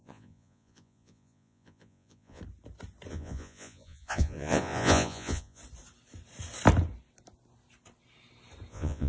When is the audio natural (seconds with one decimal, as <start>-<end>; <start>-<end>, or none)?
2.4-3.1; 5.6-8.7